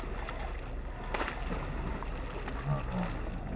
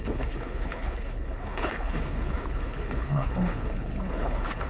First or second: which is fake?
second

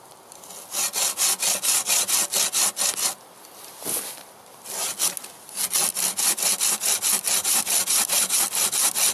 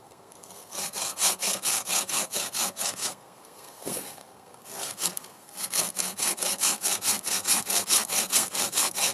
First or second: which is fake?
second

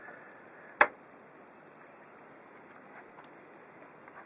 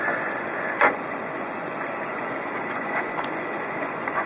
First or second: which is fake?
second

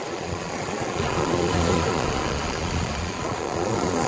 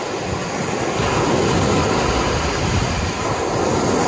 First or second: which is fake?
first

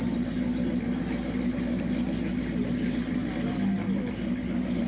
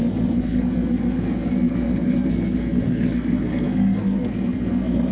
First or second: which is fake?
second